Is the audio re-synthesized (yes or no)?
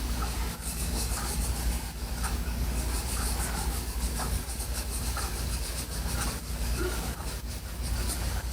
yes